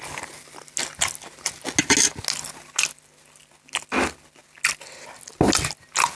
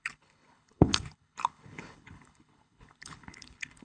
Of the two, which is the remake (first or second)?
second